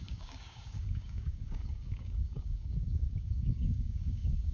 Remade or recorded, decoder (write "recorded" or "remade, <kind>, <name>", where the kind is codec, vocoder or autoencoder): remade, codec, DAC